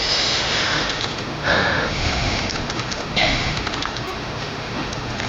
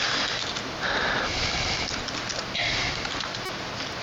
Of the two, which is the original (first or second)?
second